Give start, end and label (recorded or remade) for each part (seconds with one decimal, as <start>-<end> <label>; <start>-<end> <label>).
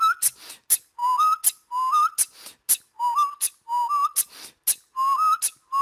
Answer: 0.0-5.8 recorded